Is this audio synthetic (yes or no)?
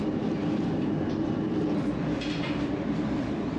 yes